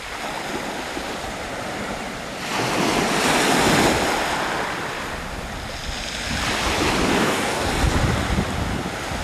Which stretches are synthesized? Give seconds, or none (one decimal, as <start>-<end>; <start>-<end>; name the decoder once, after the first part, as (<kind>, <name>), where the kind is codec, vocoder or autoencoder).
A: 7.1-7.7 (codec, DAC)